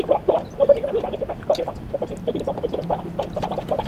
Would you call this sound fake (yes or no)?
no